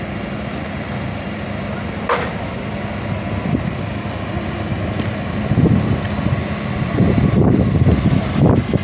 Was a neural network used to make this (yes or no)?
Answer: no